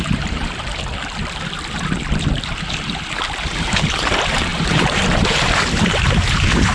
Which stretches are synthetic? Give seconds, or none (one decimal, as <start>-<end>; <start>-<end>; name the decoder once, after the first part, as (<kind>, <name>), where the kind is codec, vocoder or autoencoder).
0.0-0.4 (vocoder, BigVGAN v2); 3.6-6.7